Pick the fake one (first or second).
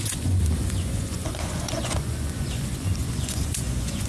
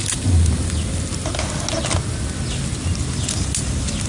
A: first